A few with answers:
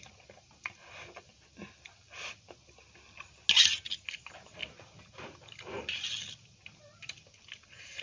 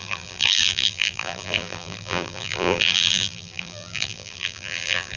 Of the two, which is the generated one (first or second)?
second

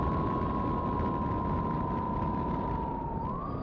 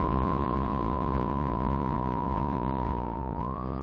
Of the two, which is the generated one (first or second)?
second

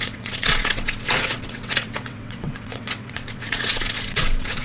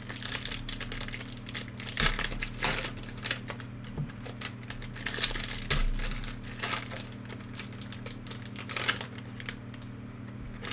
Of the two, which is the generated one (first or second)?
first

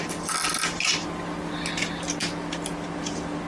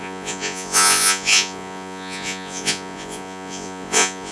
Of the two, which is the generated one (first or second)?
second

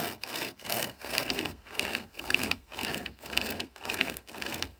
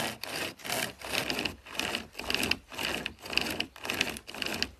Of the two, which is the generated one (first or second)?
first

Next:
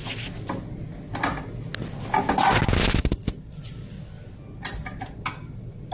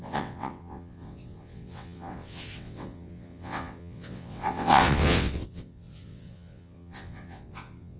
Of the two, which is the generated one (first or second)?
second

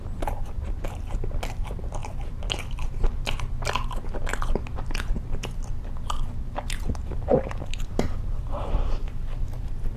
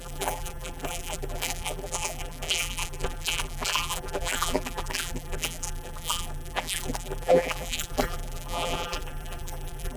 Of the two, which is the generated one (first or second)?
second